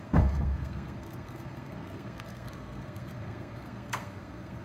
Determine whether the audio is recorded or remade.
remade